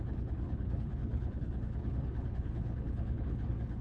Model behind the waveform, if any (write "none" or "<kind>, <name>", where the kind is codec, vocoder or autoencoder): codec, HILCodec